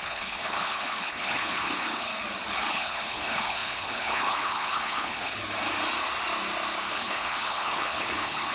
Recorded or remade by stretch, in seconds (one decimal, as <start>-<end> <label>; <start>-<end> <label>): 0.0-2.1 remade; 2.1-2.7 recorded; 2.7-5.4 remade; 5.4-6.9 recorded; 6.9-8.5 remade